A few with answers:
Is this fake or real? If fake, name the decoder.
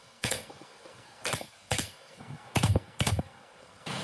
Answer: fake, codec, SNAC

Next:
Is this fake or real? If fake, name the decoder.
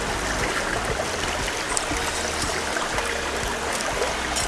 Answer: real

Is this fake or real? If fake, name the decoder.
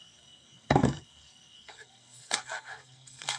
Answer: fake, codec, SNAC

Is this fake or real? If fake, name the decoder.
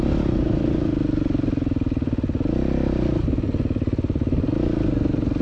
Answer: real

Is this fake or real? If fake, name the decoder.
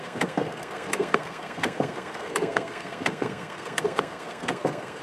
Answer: fake, codec, SNAC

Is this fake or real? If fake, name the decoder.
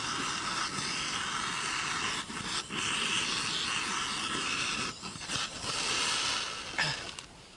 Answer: real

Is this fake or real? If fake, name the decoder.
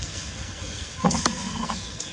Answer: fake, codec, SNAC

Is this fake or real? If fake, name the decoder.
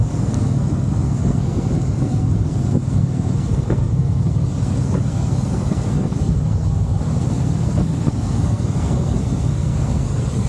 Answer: fake, codec, SNAC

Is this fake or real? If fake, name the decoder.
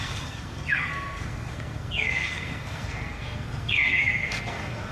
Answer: fake, codec, SNAC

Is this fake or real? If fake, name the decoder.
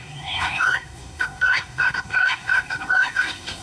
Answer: fake, codec, SNAC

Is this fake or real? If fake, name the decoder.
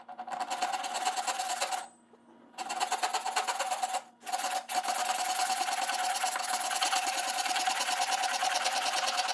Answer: real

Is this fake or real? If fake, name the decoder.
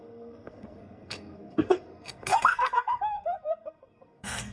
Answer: fake, codec, SNAC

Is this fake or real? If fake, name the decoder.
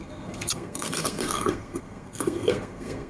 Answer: fake, codec, SNAC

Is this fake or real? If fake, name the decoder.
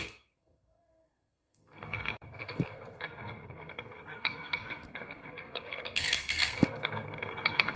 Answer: fake, codec, SNAC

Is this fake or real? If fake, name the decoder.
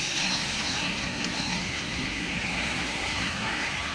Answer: fake, codec, SNAC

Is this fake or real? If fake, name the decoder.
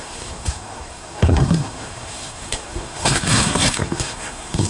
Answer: fake, codec, SNAC